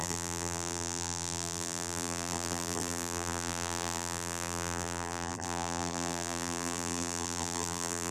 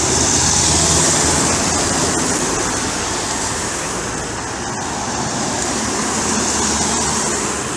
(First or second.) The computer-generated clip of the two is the first